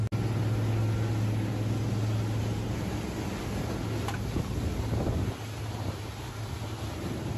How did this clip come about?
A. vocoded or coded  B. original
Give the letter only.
B